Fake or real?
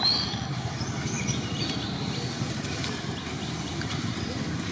fake